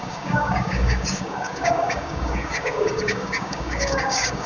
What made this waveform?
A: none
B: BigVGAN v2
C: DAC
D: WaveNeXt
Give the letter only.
C